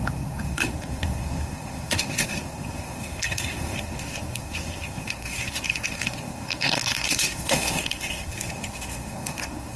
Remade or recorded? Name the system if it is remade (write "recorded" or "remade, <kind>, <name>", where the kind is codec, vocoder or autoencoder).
remade, codec, SNAC